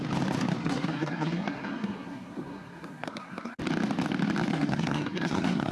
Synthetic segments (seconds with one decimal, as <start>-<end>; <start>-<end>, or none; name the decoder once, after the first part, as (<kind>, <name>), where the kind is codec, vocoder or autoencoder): 0.6-3.6 (codec, SNAC); 4.5-5.7